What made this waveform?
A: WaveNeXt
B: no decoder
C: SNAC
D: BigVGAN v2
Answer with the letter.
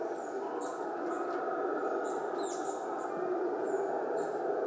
B